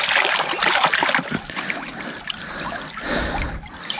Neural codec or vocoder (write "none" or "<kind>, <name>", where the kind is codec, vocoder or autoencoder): none